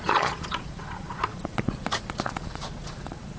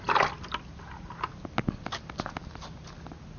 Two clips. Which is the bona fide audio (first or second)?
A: second